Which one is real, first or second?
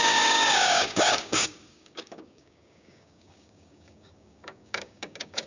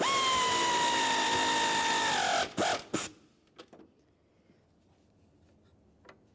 second